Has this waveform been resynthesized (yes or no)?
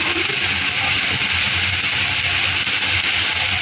no